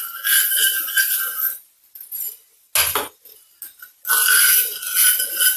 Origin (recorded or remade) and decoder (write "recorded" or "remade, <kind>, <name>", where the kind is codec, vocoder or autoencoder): recorded